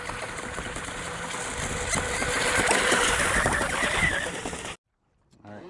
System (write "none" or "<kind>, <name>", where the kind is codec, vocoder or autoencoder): none